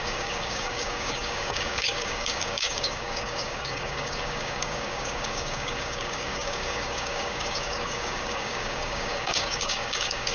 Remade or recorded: remade